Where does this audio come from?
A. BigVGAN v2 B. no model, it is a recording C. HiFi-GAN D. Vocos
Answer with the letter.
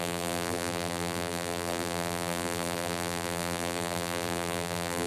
A